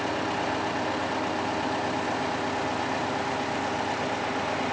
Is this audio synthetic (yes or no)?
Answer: no